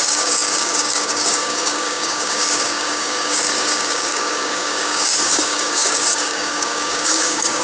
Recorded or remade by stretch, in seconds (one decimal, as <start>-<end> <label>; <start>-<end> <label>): 0.0-7.6 remade